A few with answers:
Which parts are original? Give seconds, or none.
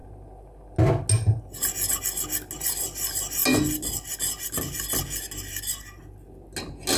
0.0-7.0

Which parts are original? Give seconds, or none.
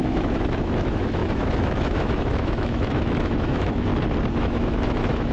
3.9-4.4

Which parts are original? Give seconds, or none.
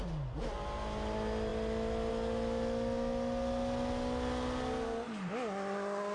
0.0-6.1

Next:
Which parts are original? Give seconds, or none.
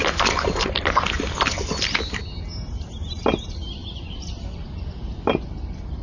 0.0-6.0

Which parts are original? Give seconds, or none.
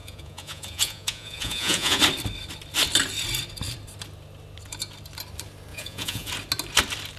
2.0-5.7; 6.3-7.2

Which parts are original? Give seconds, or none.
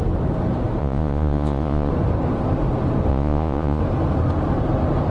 0.0-0.8; 1.9-3.1; 3.8-5.1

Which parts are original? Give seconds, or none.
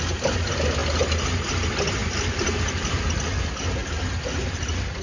0.0-2.0; 3.0-3.8; 4.5-5.0